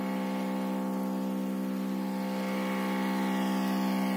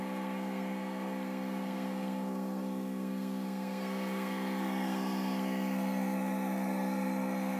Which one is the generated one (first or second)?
second